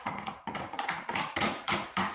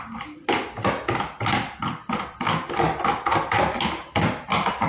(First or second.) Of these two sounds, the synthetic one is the first